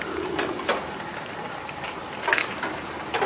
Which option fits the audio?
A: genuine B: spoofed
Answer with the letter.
A